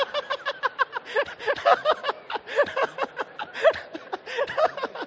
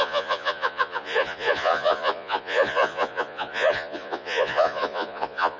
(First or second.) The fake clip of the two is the second